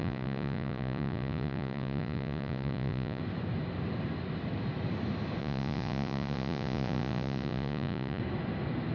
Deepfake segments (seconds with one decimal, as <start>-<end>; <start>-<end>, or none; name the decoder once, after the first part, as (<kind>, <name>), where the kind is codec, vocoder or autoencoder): 0.0-3.2 (vocoder, Vocos); 5.4-8.2

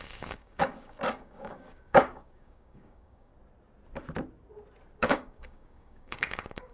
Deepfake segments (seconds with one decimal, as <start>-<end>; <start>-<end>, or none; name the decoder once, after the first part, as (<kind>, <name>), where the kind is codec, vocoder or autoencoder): 0.0-3.3 (codec, DAC); 5.0-6.7

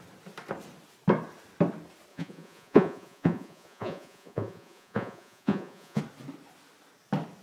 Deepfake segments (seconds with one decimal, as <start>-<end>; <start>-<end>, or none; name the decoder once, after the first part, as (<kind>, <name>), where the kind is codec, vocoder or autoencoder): 2.1-6.0 (vocoder, Vocos)

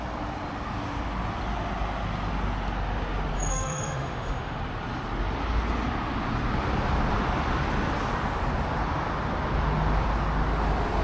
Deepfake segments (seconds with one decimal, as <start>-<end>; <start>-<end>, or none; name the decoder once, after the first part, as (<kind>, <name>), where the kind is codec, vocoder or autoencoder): 3.5-4.6 (autoencoder, DAC-VAE)

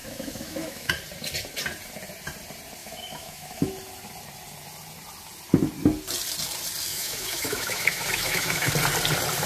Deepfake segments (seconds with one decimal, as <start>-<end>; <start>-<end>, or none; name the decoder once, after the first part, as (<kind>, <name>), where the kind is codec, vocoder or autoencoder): 0.0-0.9 (autoencoder, DAC-VAE); 2.8-3.7; 6.9-8.7